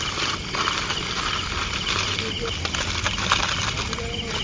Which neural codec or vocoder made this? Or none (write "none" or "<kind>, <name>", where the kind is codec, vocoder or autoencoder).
none